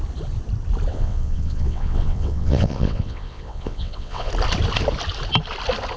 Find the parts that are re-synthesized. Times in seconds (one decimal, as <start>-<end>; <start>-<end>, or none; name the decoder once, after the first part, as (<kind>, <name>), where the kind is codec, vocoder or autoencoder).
0.9-4.3 (vocoder, WaveNeXt)